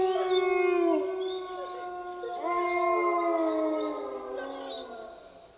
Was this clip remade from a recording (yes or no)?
no